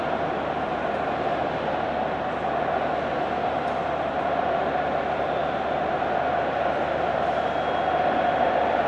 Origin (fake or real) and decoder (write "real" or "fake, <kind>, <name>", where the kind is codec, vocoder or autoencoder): real